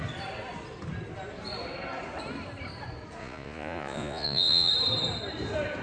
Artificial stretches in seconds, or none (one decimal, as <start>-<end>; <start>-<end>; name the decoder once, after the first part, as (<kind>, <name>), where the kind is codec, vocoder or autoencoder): 3.2-4.7 (vocoder, Vocos)